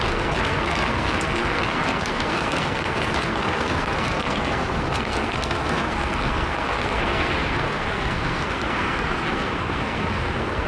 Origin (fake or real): fake